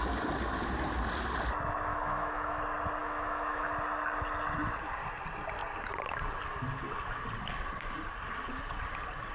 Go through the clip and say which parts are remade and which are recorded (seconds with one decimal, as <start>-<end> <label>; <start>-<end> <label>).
0.0-1.9 recorded; 1.9-2.6 remade; 2.6-3.0 recorded; 3.0-3.7 remade; 3.7-9.3 recorded